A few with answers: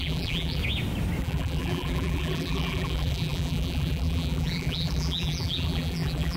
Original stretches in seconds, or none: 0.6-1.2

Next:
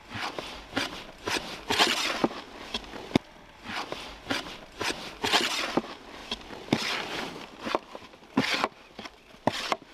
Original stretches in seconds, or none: 0.0-6.2; 7.2-9.9

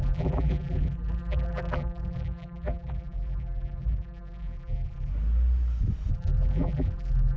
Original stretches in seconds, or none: 5.1-6.1

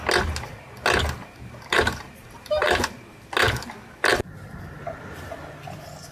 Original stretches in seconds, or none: 0.0-1.2; 2.9-4.1; 4.6-6.1

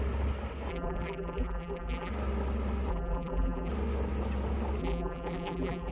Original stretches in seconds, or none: 0.0-0.7; 2.1-2.9; 3.7-4.8

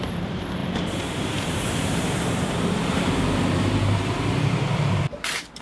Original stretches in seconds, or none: none

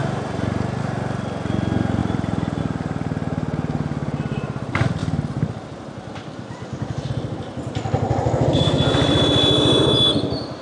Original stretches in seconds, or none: 0.0-2.0; 2.6-5.0; 7.1-10.6

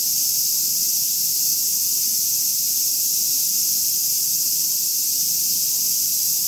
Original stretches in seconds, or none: 0.0-4.9; 6.0-6.5